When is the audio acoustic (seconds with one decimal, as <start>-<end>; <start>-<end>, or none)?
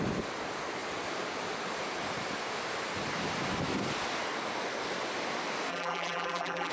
0.0-5.7